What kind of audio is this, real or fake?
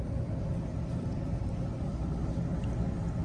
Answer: real